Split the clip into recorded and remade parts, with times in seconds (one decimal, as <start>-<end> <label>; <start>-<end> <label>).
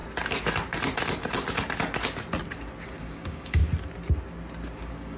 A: 0.0-3.0 recorded; 3.0-3.6 remade; 3.6-4.8 recorded; 4.8-5.2 remade